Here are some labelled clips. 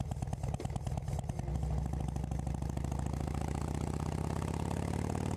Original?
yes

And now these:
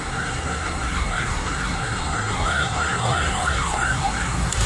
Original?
no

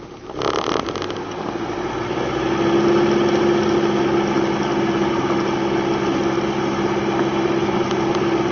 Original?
yes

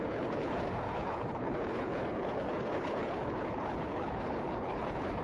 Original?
no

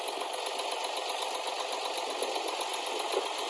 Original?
yes